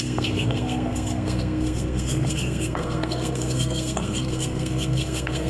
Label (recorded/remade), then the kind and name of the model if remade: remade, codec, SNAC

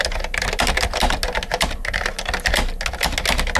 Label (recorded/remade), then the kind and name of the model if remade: recorded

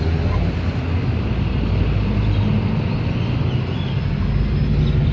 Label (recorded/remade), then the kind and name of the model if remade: recorded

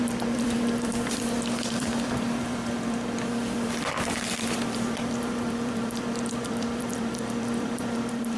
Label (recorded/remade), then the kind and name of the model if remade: remade, vocoder, BigVGAN v2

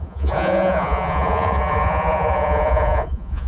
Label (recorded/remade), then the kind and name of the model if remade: remade, vocoder, Vocos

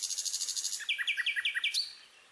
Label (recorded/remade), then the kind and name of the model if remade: recorded